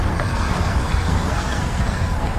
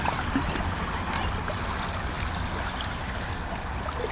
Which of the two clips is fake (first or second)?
first